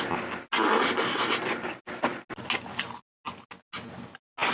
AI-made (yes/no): no